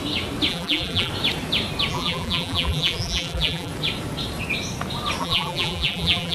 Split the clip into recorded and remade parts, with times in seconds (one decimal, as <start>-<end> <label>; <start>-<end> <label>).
0.0-0.5 recorded; 0.5-1.1 remade; 1.1-1.9 recorded; 1.9-3.7 remade; 3.7-5.2 recorded; 5.2-6.3 remade